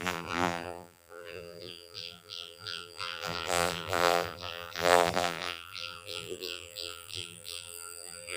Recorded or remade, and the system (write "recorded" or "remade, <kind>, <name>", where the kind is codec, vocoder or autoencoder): remade, vocoder, BigVGAN v2